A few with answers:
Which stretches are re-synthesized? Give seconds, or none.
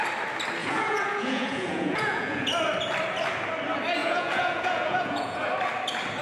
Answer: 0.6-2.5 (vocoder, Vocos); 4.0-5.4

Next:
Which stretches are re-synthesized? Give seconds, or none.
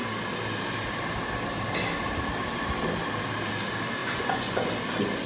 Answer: 4.0-4.7 (vocoder, Vocos)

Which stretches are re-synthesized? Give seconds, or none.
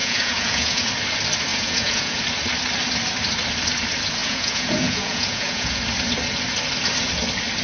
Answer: 0.0-0.9 (vocoder, Vocos); 1.5-2.2; 4.2-5.8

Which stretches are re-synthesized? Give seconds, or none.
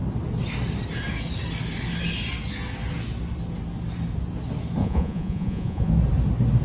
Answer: 4.8-5.9 (vocoder, Vocos)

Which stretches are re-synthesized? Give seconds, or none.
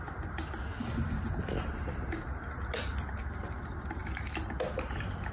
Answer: none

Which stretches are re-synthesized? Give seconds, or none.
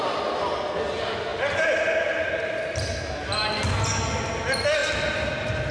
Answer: none